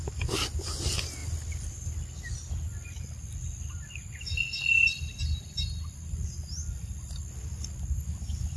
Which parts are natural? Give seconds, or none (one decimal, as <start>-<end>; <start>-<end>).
0.0-8.6